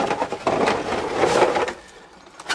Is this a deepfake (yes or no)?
no